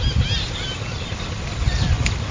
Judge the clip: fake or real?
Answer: real